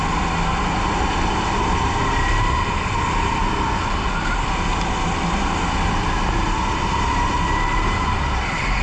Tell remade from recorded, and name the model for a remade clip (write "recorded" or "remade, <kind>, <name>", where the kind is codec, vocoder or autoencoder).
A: recorded